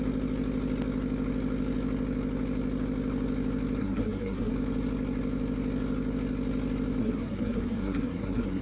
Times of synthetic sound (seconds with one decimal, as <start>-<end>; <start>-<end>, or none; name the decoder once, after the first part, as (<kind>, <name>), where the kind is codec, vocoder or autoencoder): 3.8-4.5 (codec, SNAC); 7.0-8.6